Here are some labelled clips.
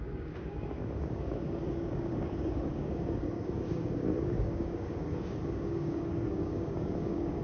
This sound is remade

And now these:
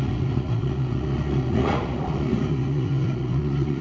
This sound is remade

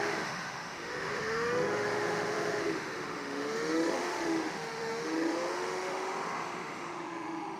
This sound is remade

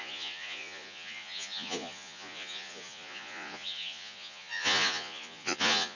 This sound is remade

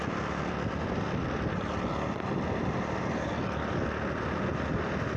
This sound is recorded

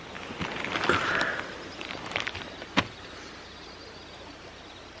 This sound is recorded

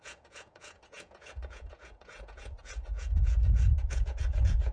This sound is remade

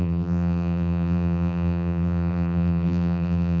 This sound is remade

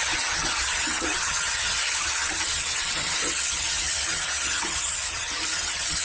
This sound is remade